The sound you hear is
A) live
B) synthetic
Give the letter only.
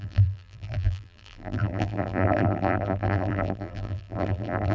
B